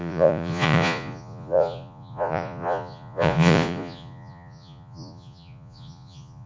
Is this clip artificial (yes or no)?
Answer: yes